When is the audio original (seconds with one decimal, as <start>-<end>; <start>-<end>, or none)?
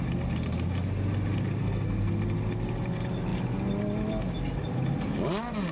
0.0-1.6; 2.1-5.7